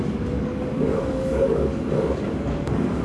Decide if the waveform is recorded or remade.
remade